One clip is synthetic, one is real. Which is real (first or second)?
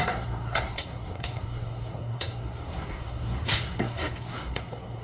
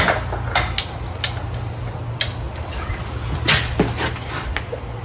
second